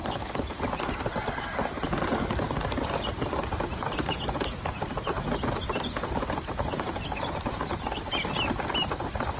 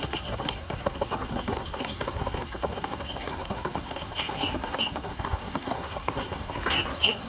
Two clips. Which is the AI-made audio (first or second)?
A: second